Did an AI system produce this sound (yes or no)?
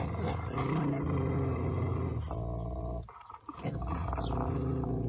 no